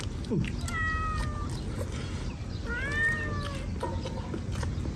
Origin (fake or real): real